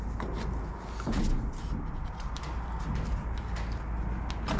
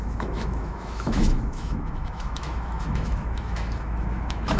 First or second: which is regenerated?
second